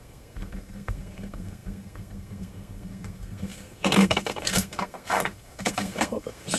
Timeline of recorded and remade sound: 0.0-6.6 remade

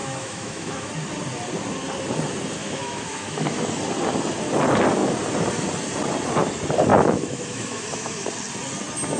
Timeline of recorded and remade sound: 0.0-0.9 remade; 0.9-2.6 recorded; 2.6-3.6 remade; 3.6-6.9 recorded; 6.9-8.3 remade; 8.3-9.2 recorded

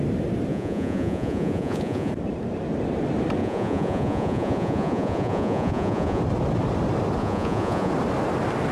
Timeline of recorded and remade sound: 0.0-0.5 recorded; 0.5-2.1 remade; 2.1-3.4 recorded; 3.4-6.2 remade; 6.2-7.2 recorded; 7.2-7.9 remade; 7.9-8.7 recorded

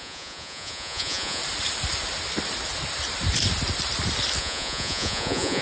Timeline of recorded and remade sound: 0.0-1.4 remade; 1.4-4.4 recorded; 4.4-5.6 remade

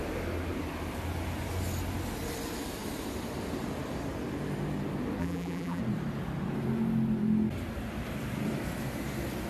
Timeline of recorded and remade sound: 0.0-5.2 recorded; 5.2-5.8 remade; 5.8-9.5 recorded